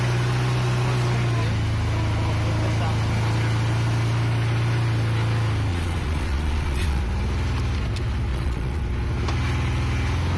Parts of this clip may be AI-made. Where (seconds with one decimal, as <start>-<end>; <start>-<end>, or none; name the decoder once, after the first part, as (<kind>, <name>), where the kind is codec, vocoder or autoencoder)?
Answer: 5.7-7.0 (vocoder, Vocos); 8.3-8.8